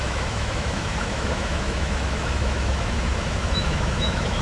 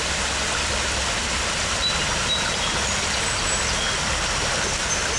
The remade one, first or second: first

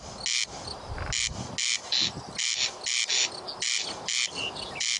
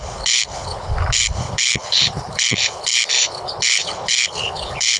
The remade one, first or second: second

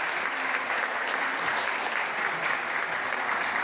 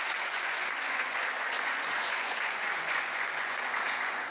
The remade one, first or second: second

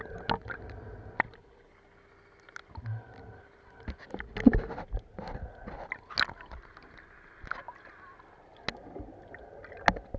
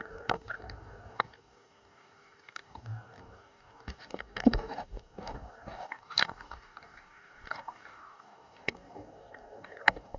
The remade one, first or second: second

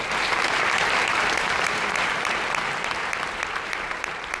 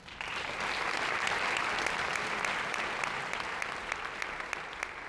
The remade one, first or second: first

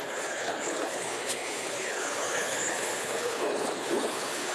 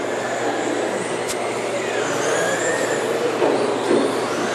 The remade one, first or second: first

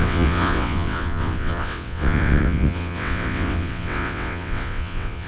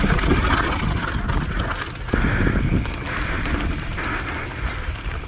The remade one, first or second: first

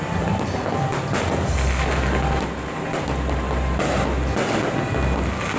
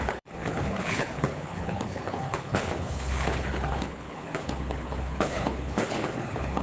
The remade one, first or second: second